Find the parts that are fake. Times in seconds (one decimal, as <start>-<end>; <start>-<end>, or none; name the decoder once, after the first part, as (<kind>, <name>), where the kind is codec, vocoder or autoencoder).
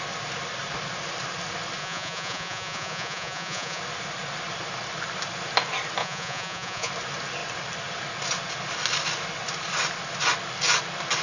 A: 1.8-3.8 (vocoder, Vocos); 6.0-6.9